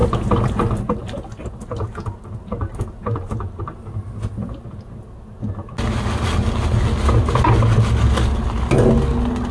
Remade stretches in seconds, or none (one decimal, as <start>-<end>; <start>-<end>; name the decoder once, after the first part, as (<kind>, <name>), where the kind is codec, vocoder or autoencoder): none